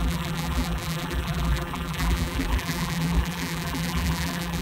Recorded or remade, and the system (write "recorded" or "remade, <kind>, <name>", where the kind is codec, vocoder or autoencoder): remade, vocoder, BigVGAN v2